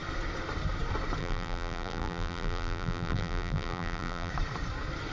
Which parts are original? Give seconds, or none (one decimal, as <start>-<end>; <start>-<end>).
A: 0.0-1.2; 4.3-5.1

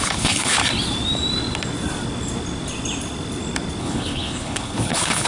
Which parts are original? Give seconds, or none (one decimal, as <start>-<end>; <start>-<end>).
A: 0.6-3.8